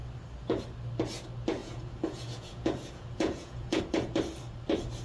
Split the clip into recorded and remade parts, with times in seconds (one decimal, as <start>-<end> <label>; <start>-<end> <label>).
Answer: 0.0-1.6 recorded; 1.6-3.8 remade; 3.8-5.0 recorded